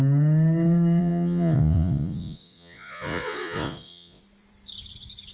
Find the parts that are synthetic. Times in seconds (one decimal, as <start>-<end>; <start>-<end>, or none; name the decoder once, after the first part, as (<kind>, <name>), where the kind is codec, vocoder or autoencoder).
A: 1.0-4.2 (vocoder, Vocos)